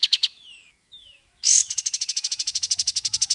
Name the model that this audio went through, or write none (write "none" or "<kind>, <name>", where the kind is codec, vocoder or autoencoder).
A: autoencoder, DAC-VAE